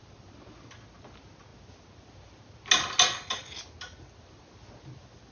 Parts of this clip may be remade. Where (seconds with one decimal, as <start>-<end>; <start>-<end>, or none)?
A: none